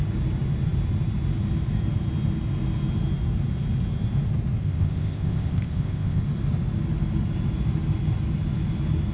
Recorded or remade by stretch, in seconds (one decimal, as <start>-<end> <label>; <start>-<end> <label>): 0.0-4.6 recorded; 4.6-6.2 remade; 6.2-9.1 recorded